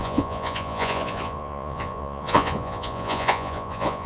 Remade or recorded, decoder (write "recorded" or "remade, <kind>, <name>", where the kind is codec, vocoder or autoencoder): remade, vocoder, Vocos